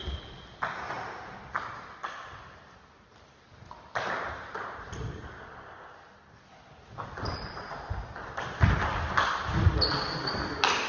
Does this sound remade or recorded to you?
recorded